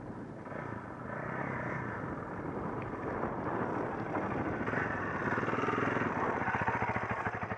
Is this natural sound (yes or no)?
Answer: yes